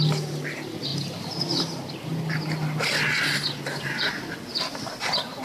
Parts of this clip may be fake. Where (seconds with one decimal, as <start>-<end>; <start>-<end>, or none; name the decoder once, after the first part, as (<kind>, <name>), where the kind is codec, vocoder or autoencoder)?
none